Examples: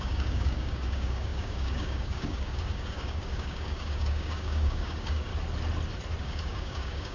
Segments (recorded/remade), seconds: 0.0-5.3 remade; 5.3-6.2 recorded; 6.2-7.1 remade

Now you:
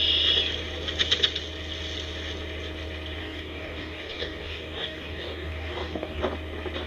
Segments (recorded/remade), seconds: 0.0-3.2 recorded; 3.2-6.2 remade; 6.2-6.9 recorded

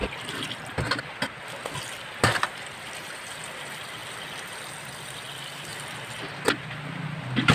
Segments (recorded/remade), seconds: 0.0-7.5 recorded

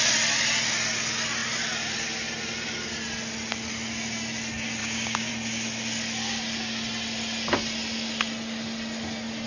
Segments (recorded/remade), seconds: 0.0-4.8 recorded; 4.8-5.3 remade; 5.3-9.5 recorded

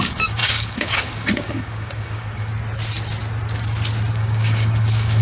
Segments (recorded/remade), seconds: 0.0-2.5 remade; 2.5-4.1 recorded; 4.1-5.2 remade